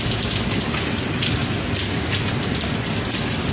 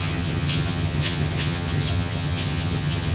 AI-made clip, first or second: second